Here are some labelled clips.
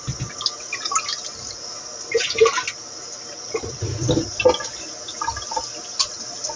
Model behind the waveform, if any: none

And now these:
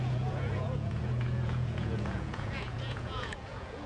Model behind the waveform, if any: vocoder, Vocos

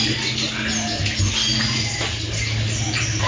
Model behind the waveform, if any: none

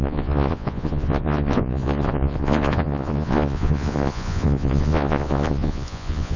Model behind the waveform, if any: vocoder, Vocos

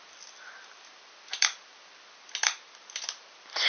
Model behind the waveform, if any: none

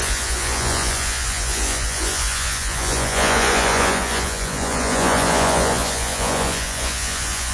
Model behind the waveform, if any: vocoder, Vocos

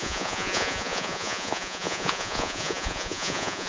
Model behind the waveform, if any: vocoder, Vocos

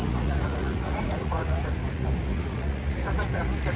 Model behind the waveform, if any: vocoder, Vocos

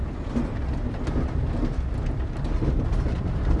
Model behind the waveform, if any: none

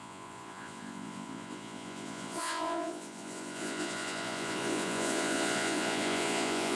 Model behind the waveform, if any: vocoder, Vocos